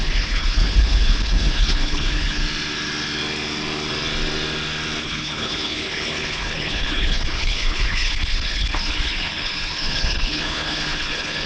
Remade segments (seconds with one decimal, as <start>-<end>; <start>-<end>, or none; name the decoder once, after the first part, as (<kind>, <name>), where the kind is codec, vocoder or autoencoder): 0.0-2.4 (codec, HILCodec); 5.0-11.5